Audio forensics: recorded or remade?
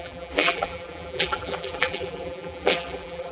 remade